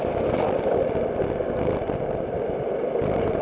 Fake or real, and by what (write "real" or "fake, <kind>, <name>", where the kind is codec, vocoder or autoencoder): real